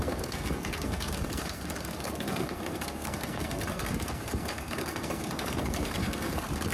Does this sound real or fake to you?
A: fake